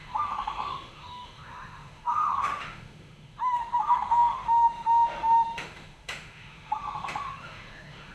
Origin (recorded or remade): remade